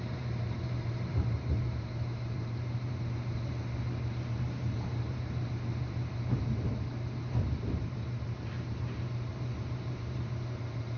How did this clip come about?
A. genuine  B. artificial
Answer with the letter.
B